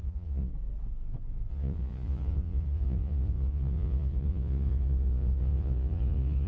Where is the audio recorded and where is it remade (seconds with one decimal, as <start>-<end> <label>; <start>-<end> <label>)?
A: 0.0-0.5 remade; 0.5-1.5 recorded; 1.5-6.5 remade